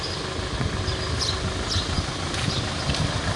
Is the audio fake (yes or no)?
no